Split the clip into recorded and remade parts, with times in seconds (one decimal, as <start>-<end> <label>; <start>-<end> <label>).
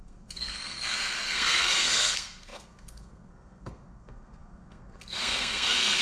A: 0.0-6.0 remade